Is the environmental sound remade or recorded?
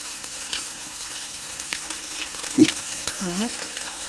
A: remade